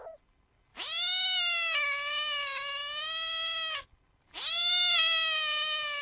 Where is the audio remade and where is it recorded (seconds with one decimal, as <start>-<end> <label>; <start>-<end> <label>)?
0.0-6.0 recorded